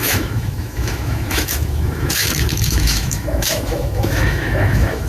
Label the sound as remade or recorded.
remade